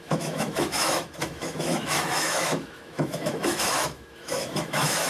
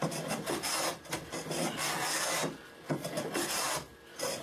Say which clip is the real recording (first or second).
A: second